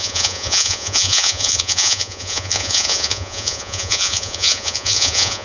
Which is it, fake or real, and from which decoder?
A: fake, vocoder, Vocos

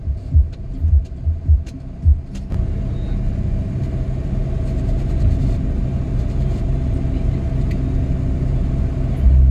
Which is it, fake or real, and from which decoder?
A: real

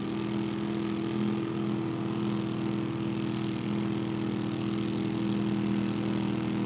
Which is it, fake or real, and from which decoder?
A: real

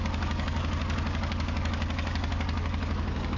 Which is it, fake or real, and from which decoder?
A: fake, codec, DAC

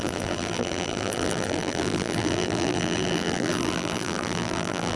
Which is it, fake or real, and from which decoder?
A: fake, vocoder, BigVGAN v2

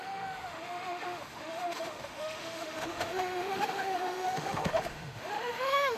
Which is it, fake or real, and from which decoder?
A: fake, autoencoder, DAC-VAE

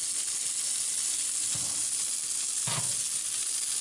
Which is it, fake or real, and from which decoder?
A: real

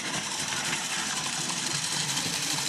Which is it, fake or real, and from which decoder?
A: fake, vocoder, BigVGAN v2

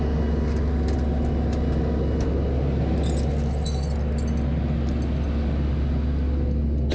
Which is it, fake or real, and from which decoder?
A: real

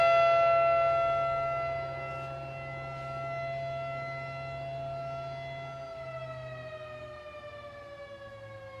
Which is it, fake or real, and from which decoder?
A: real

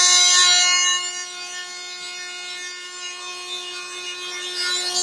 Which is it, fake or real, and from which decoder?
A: real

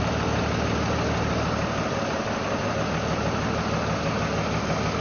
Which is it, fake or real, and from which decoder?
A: real